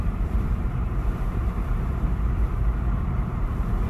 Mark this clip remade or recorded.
remade